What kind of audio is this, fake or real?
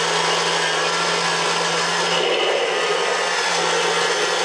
real